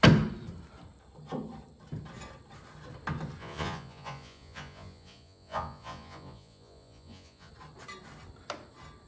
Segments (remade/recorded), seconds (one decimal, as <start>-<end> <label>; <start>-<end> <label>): 0.0-3.4 recorded; 3.4-7.5 remade; 7.5-9.1 recorded